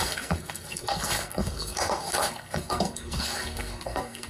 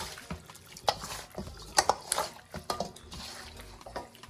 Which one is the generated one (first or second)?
first